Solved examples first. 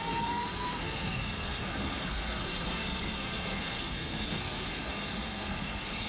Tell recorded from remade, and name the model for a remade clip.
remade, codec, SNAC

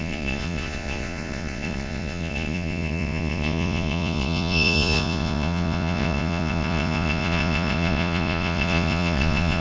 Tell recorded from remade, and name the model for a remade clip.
remade, vocoder, Vocos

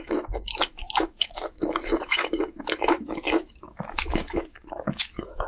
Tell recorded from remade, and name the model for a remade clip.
remade, autoencoder, DAC-VAE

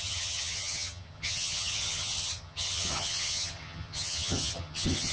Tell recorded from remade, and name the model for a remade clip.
remade, vocoder, HiFi-GAN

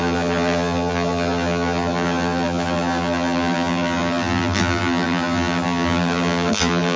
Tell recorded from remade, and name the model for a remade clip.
remade, vocoder, BigVGAN v2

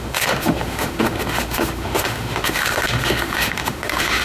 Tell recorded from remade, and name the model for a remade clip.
remade, autoencoder, DAC-VAE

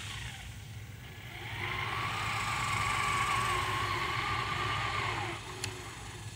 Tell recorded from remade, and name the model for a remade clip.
recorded